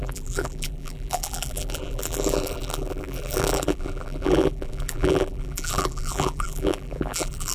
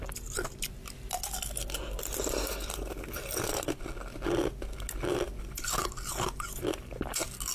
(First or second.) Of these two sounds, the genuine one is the second